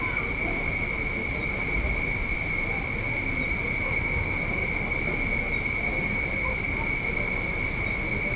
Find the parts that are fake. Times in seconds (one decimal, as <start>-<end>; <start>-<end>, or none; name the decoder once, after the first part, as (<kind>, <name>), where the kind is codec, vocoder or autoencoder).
1.2-2.7 (vocoder, BigVGAN v2)